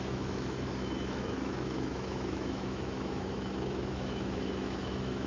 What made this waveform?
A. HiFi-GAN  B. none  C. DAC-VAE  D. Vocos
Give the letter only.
C